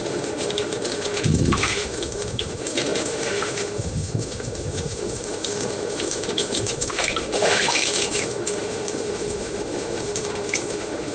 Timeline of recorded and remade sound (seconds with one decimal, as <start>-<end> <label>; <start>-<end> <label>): 0.0-11.1 remade